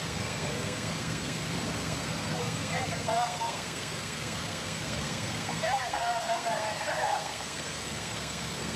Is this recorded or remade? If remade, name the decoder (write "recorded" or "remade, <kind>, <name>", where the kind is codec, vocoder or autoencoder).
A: remade, codec, SNAC